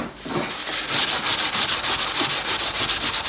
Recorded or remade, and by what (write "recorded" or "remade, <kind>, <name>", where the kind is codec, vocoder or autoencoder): recorded